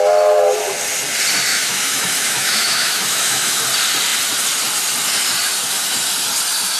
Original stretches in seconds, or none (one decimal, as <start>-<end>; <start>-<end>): 0.0-1.5; 3.6-6.8